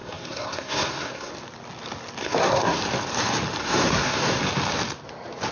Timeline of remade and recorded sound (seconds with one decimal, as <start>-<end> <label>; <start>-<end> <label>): 0.0-1.3 remade; 1.3-2.2 recorded; 2.2-2.8 remade; 2.8-3.6 recorded; 3.6-4.4 remade; 4.4-5.5 recorded